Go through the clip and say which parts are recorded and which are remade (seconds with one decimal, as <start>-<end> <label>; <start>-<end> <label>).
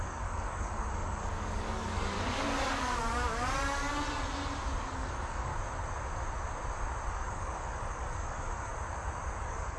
0.0-3.9 remade; 3.9-4.8 recorded; 4.8-5.5 remade; 5.5-7.1 recorded; 7.1-8.7 remade; 8.7-9.4 recorded; 9.4-9.8 remade